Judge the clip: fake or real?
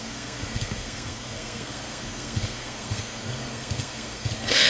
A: fake